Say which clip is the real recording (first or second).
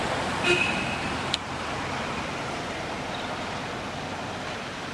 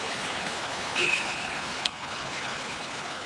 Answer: first